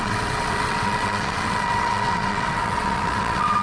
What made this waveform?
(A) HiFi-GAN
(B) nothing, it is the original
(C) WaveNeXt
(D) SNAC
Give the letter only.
C